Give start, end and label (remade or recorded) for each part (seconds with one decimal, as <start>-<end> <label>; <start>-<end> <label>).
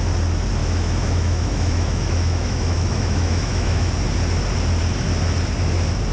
0.0-0.6 recorded; 0.6-3.9 remade; 3.9-6.1 recorded